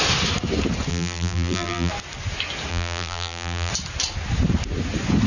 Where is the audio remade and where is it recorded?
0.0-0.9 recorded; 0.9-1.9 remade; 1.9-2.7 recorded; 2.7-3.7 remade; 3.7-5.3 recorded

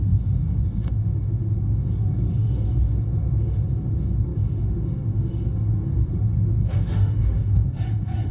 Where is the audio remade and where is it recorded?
0.0-8.3 remade

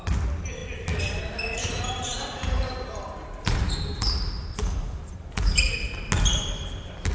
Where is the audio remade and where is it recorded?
0.0-1.6 recorded; 1.6-5.9 remade; 5.9-7.1 recorded

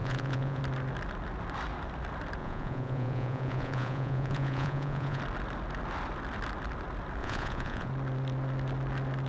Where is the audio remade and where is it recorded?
0.0-0.6 remade; 0.6-2.4 recorded; 2.4-5.2 remade; 5.2-7.2 recorded; 7.2-7.9 remade; 7.9-9.3 recorded

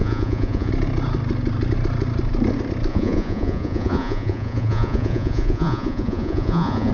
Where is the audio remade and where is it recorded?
0.0-0.7 remade; 0.7-2.9 recorded; 2.9-6.9 remade